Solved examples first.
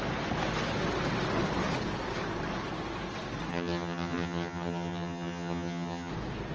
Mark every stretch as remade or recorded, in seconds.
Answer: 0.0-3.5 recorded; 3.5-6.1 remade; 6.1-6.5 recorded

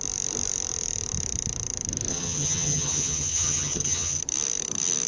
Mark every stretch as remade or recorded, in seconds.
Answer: 0.0-2.1 recorded; 2.1-4.2 remade; 4.2-5.1 recorded